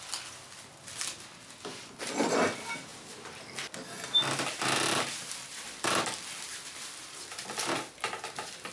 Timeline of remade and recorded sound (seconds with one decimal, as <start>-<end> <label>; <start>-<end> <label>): 0.0-8.7 recorded